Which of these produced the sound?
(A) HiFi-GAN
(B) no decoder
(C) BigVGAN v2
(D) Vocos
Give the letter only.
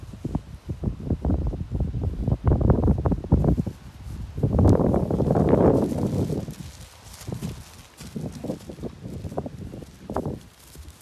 B